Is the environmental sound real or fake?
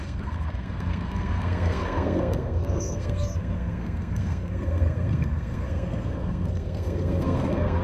fake